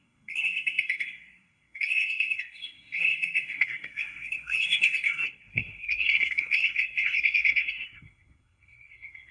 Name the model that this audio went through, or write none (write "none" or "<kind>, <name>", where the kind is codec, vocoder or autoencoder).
codec, SNAC